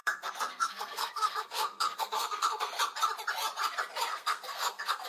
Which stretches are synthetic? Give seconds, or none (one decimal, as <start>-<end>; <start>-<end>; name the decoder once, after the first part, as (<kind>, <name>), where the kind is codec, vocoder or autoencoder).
0.0-2.8 (codec, SNAC); 4.1-5.1